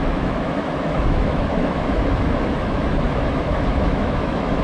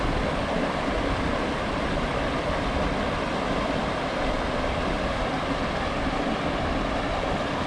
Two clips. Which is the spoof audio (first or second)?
first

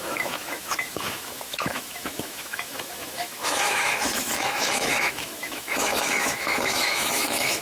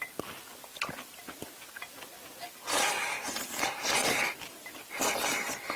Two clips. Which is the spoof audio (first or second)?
first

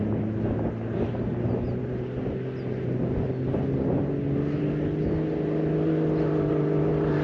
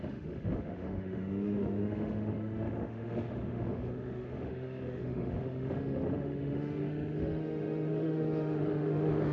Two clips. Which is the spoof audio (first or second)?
second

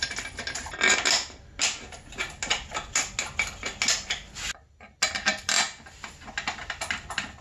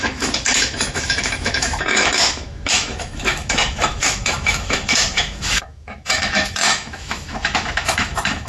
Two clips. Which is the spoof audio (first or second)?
second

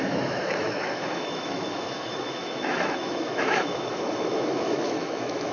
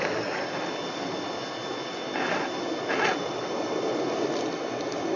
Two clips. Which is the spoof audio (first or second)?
first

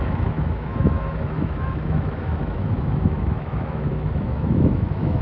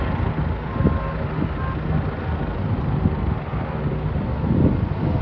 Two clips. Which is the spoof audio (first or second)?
first